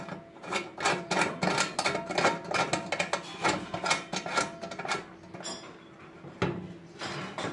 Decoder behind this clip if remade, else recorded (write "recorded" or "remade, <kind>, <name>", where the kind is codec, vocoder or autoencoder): recorded